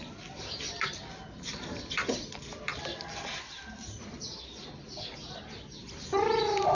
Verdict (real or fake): real